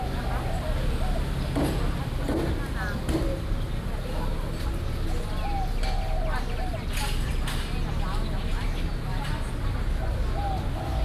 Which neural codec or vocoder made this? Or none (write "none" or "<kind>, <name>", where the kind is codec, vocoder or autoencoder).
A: none